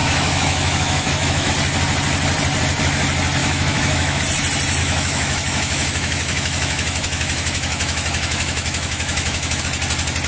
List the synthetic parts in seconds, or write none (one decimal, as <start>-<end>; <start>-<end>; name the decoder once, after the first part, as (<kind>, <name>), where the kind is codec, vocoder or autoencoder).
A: 0.0-1.5 (autoencoder, DAC-VAE); 3.4-4.2; 4.8-9.6